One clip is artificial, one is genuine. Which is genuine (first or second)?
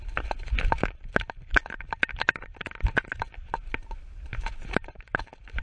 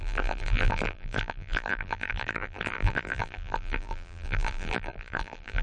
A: first